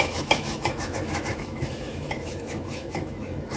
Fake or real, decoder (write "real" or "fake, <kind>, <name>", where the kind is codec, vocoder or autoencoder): fake, autoencoder, DAC-VAE